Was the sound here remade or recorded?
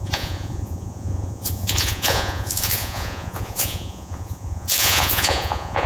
remade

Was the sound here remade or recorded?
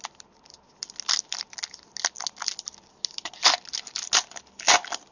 recorded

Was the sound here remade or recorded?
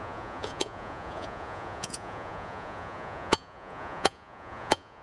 remade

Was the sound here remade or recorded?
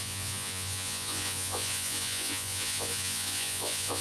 remade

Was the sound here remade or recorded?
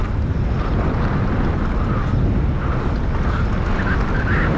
recorded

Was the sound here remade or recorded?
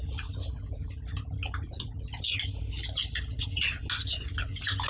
recorded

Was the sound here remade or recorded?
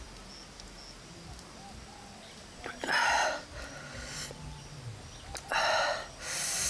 recorded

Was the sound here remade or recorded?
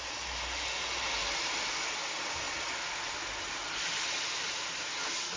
recorded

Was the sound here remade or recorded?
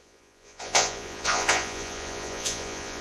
remade